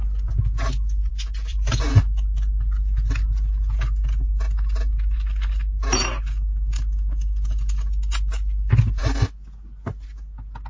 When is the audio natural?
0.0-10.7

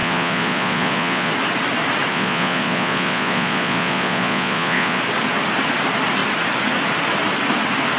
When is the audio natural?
1.3-2.1; 5.0-8.0

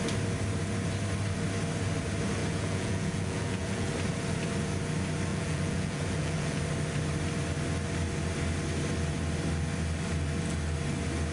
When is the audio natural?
0.0-2.4; 3.9-5.3; 6.6-11.3

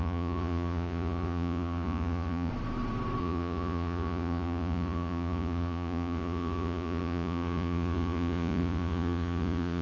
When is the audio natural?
2.5-3.2

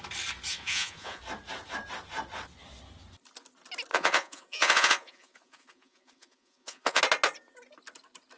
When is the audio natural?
0.0-0.5; 1.2-3.9; 7.0-8.4

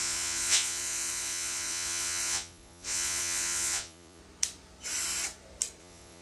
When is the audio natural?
4.2-5.8